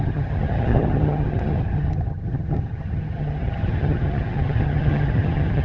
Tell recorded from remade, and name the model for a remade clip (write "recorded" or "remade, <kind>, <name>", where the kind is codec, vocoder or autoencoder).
remade, vocoder, HiFi-GAN